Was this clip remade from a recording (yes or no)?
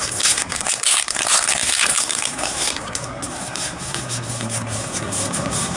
yes